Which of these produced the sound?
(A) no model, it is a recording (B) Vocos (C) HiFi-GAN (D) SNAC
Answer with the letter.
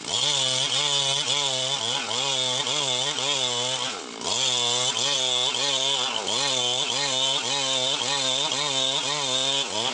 A